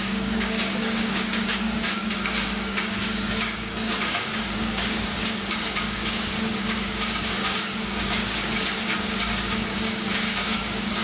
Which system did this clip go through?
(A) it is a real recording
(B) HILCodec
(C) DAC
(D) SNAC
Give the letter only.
C